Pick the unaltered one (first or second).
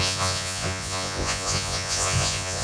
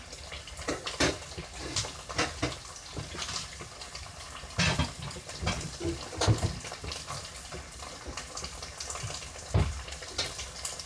second